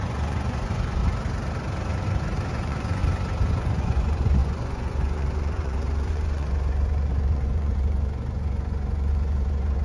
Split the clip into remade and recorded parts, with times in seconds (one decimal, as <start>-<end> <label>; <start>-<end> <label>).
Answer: 0.0-1.0 remade; 1.0-2.5 recorded; 2.5-3.0 remade; 3.0-3.5 recorded; 3.5-9.8 remade